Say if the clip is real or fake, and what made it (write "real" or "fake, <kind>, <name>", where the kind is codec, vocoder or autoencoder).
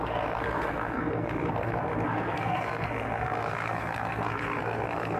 fake, codec, SNAC